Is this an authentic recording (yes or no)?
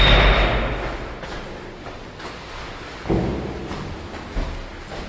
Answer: yes